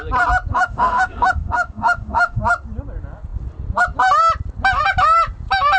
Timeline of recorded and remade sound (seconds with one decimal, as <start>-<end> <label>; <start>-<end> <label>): 0.0-0.5 recorded; 0.5-2.4 remade; 2.4-5.8 recorded